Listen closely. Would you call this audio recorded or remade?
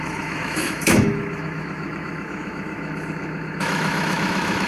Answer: remade